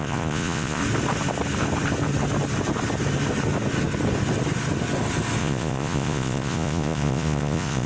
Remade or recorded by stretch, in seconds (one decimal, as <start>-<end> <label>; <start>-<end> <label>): 0.0-0.8 remade; 0.8-5.4 recorded; 5.4-7.9 remade